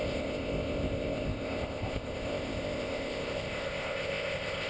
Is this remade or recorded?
remade